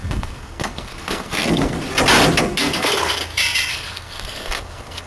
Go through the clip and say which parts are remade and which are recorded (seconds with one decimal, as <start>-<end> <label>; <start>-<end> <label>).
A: 0.0-1.8 remade; 1.8-2.4 recorded; 2.4-3.2 remade; 3.2-3.7 recorded; 3.7-5.1 remade